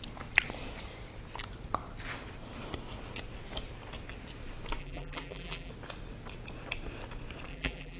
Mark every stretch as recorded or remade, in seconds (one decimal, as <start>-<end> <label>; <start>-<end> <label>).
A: 0.0-4.8 recorded; 4.8-5.7 remade; 5.7-7.5 recorded; 7.5-8.0 remade